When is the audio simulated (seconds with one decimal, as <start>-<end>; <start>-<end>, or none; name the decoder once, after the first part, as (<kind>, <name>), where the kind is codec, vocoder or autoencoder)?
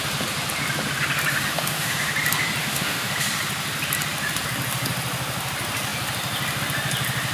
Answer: 1.3-2.1 (autoencoder, DAC-VAE); 2.6-3.1